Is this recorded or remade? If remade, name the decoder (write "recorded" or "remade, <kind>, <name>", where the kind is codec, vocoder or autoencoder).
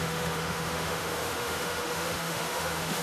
remade, autoencoder, DAC-VAE